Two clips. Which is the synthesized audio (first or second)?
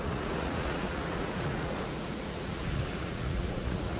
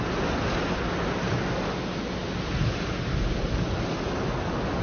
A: first